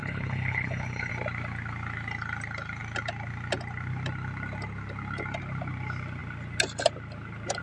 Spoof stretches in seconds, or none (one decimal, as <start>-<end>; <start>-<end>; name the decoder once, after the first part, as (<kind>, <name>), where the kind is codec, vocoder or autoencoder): 0.0-1.1 (codec, HILCodec)